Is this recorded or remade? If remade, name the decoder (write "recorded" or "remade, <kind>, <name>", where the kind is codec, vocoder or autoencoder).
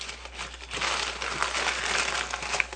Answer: recorded